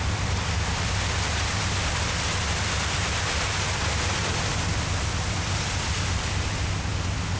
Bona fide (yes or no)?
yes